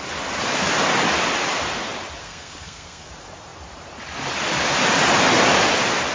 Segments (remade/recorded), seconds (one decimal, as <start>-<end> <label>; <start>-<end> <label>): 0.0-2.2 recorded; 2.2-3.1 remade; 3.1-6.1 recorded